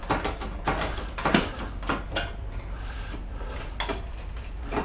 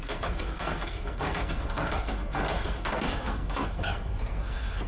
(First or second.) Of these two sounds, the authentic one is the first